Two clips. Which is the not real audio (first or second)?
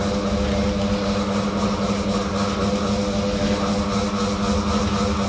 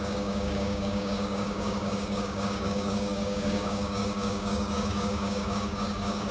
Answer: second